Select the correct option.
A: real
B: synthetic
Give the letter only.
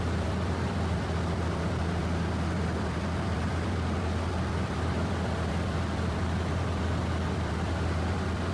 B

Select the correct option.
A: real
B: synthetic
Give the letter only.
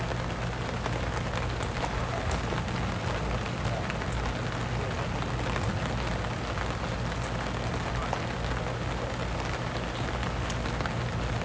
A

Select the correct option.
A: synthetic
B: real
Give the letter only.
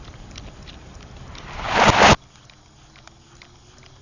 B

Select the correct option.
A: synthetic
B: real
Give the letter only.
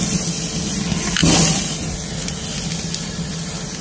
B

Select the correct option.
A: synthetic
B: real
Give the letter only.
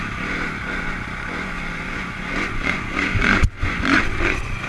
A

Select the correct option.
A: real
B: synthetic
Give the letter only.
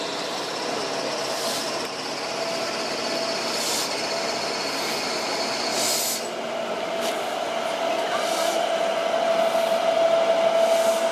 A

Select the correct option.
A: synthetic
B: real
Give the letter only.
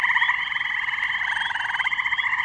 B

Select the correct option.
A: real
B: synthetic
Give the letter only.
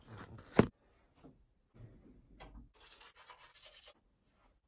A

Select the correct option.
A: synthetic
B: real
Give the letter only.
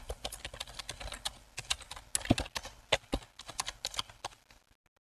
B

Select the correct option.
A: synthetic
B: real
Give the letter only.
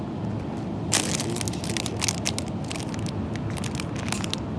B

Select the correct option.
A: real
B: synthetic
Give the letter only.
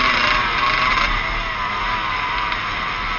A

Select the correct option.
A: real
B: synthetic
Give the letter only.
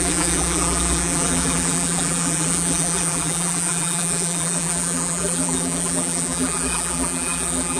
B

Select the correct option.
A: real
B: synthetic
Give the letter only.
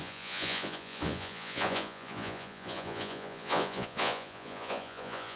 B